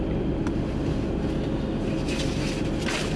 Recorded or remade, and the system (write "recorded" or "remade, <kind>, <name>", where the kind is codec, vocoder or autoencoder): recorded